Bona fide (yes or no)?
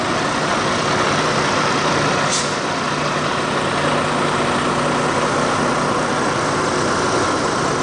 yes